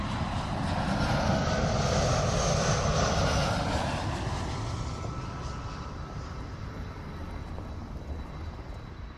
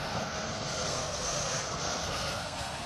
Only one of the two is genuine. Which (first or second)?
first